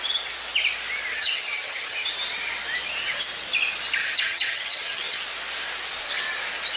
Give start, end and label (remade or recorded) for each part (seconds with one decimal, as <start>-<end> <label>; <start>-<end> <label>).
0.0-1.1 recorded; 1.1-2.1 remade; 2.1-4.0 recorded; 4.0-5.2 remade; 5.2-6.8 recorded